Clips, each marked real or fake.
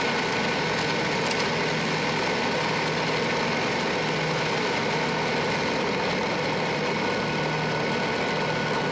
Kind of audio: real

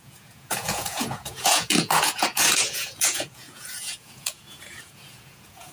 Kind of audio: fake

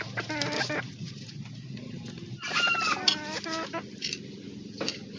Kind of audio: fake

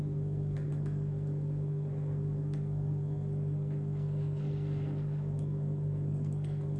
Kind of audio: fake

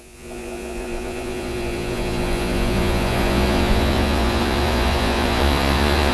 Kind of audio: fake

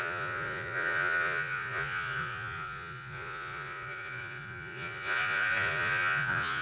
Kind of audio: fake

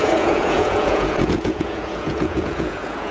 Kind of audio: fake